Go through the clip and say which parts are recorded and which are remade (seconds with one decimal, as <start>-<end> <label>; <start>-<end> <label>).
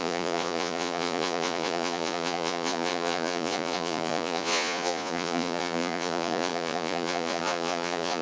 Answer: 0.0-8.2 remade